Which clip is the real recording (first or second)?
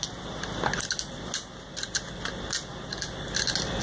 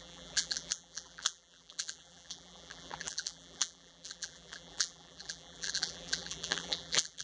first